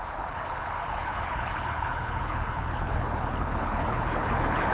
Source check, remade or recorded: remade